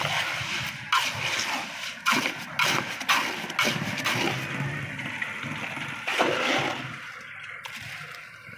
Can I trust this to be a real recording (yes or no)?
yes